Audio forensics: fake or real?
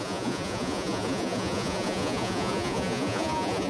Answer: fake